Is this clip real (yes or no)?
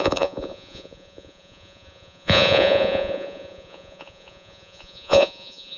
no